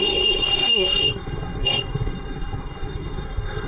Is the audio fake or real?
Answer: fake